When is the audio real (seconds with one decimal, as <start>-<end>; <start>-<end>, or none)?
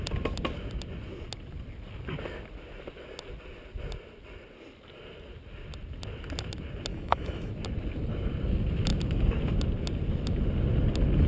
0.0-6.9; 7.5-11.3